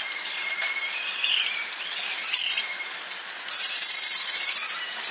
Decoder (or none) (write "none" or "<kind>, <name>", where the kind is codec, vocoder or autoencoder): vocoder, BigVGAN v2